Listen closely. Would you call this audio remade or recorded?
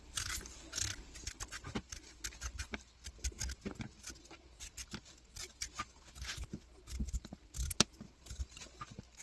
recorded